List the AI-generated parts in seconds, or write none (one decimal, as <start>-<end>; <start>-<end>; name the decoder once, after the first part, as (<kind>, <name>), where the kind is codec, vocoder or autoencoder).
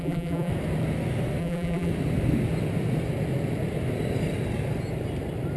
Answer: 0.0-0.5 (vocoder, BigVGAN v2); 1.4-1.9